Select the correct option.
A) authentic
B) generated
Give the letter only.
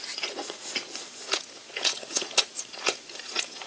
B